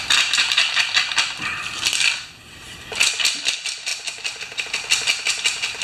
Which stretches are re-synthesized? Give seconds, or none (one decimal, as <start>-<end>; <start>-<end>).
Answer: none